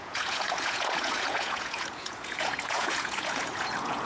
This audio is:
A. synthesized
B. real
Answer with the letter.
A